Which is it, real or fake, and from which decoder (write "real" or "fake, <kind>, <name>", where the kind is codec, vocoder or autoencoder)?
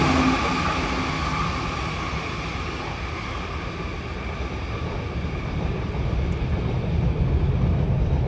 real